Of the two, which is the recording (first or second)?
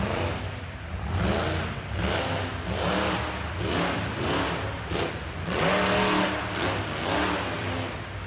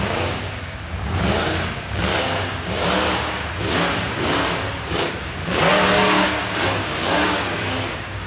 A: first